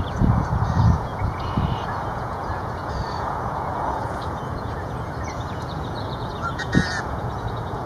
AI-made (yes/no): yes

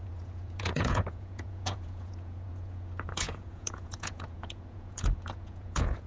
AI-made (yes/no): yes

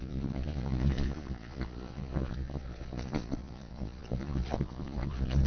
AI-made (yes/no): yes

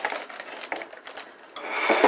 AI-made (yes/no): no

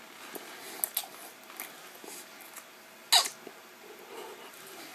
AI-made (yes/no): no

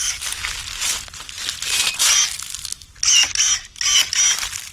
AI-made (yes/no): no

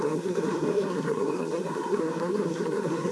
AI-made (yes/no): yes